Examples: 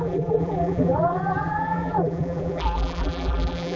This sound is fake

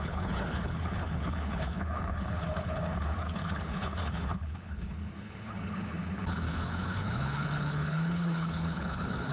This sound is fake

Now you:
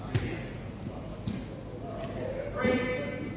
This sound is real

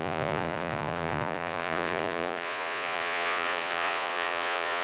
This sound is fake